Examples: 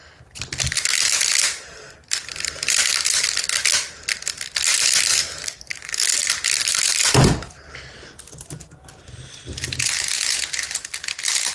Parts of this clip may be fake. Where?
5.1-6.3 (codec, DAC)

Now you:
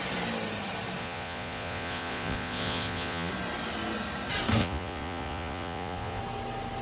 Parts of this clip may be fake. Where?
1.0-3.3 (vocoder, Vocos); 4.6-6.2

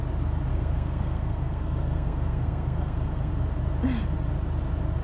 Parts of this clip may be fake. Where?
0.5-3.3 (codec, SNAC)

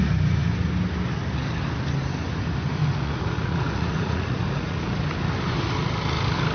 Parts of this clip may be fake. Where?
2.8-4.8 (vocoder, Vocos)

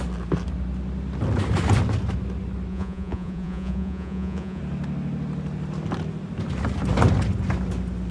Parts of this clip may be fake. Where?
2.7-4.6 (vocoder, Vocos)

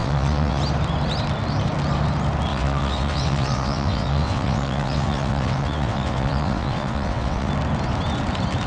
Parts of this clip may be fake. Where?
0.0-0.6 (vocoder, WaveNeXt); 2.5-7.5

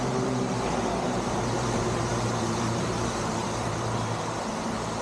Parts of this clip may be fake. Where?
0.0-5.0 (vocoder, BigVGAN v2)

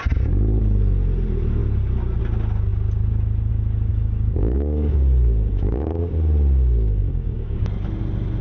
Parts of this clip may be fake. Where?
3.9-6.0 (codec, DAC); 7.0-7.6